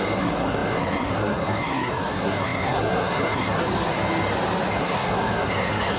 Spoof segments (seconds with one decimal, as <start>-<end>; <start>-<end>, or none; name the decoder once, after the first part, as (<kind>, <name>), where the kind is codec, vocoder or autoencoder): 0.0-3.6 (codec, SNAC); 4.8-6.0